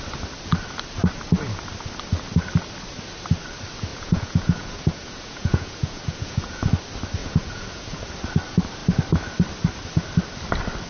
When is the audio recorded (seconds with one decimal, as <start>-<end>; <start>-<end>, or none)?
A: 0.0-3.9; 6.7-7.2; 8.0-10.9